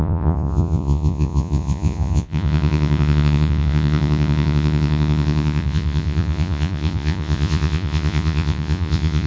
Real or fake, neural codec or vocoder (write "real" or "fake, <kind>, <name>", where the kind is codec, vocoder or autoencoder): fake, vocoder, Vocos